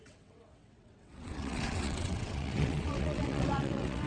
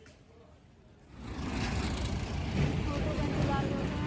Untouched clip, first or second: second